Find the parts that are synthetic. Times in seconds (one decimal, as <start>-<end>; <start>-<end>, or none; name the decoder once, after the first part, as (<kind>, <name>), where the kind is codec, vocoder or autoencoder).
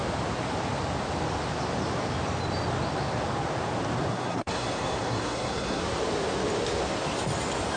4.1-5.8 (codec, SNAC)